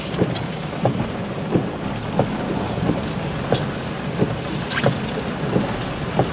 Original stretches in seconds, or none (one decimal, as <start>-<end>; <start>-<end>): 0.0-6.3